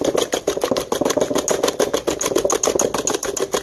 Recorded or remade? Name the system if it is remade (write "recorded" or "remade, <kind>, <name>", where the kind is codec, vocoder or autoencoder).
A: recorded